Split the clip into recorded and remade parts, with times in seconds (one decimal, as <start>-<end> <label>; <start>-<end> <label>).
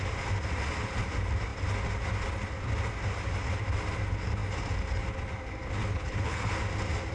0.0-5.9 recorded; 5.9-6.5 remade; 6.5-7.1 recorded